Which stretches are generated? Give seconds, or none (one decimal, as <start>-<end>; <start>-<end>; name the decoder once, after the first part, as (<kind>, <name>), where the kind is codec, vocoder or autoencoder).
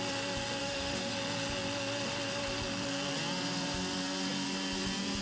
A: 0.6-1.1 (autoencoder, DAC-VAE)